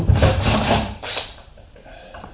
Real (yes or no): no